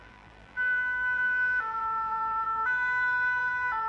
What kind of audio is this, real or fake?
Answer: fake